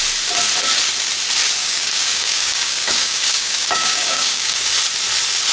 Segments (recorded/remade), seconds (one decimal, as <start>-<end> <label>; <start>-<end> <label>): 0.0-1.6 recorded; 1.6-4.7 remade; 4.7-5.5 recorded

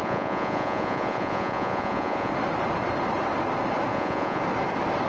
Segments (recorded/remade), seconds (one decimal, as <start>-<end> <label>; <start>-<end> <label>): 0.0-2.3 remade; 2.3-3.9 recorded; 3.9-4.4 remade; 4.4-5.1 recorded

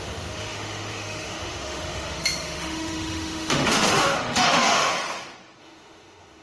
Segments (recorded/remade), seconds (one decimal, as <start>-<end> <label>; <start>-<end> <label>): 0.0-4.9 remade; 4.9-5.6 recorded; 5.6-6.4 remade

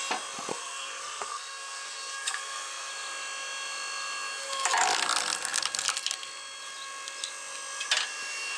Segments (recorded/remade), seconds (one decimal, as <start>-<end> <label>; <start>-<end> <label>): 0.0-0.5 recorded; 0.5-2.9 remade; 2.9-8.6 recorded

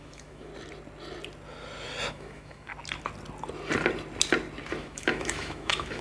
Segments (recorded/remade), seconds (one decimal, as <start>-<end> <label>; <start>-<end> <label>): 0.0-0.5 remade; 0.5-2.1 recorded; 2.1-2.7 remade; 2.7-4.8 recorded; 4.8-6.0 remade

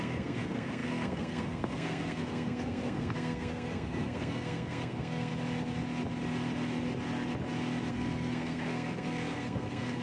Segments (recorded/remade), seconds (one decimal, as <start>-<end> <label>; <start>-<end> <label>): 0.0-5.3 remade; 5.3-7.9 recorded; 7.9-10.0 remade